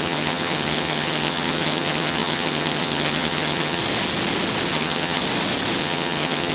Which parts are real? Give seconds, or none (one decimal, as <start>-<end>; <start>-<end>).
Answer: 3.8-4.7; 5.2-5.8

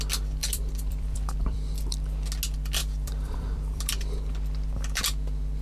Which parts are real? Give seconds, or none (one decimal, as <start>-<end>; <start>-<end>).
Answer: 0.0-0.4; 1.9-2.8; 3.9-5.6